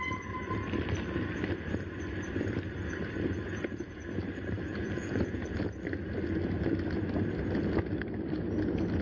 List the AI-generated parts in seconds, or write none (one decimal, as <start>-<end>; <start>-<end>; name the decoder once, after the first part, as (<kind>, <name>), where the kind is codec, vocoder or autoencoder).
3.5-4.0 (vocoder, Vocos); 4.7-5.6

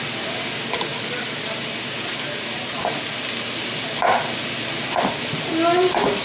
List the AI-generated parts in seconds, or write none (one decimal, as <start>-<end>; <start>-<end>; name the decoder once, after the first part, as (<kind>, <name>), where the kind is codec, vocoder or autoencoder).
none

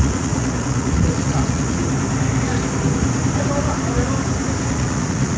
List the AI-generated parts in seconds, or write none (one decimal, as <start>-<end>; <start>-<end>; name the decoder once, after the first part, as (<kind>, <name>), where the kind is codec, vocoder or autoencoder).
0.0-1.8 (vocoder, Vocos); 4.7-5.4

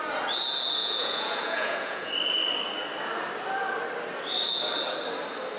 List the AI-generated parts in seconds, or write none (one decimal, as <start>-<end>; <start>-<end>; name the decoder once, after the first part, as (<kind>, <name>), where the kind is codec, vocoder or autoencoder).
0.8-2.1 (vocoder, Vocos)

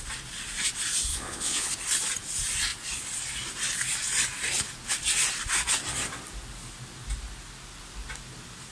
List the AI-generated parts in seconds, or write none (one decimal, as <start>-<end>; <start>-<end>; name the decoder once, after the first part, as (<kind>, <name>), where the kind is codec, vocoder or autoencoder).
1.1-1.7 (vocoder, Vocos)